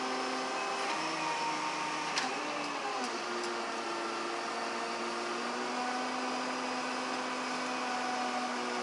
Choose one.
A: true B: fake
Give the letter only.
A